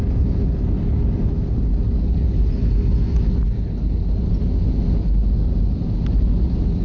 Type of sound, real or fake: real